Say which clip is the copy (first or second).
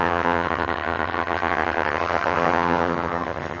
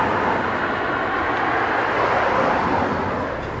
first